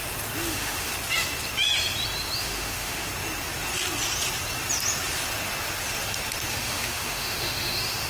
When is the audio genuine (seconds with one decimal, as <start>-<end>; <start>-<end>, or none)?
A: 0.0-0.5; 0.9-2.4; 3.1-6.5